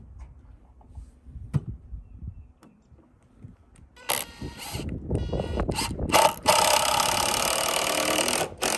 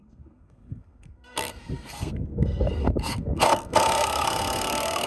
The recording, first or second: first